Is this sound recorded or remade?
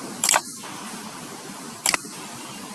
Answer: recorded